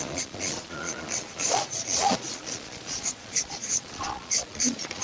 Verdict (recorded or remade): remade